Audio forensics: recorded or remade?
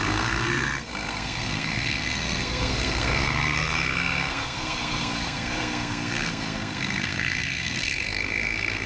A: remade